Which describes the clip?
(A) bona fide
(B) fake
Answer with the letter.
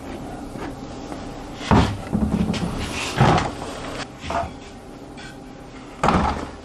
A